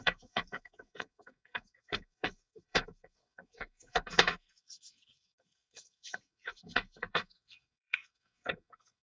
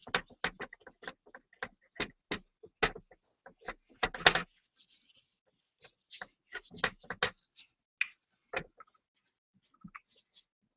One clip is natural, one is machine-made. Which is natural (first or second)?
second